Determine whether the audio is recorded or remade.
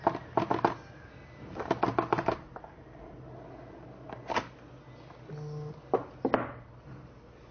recorded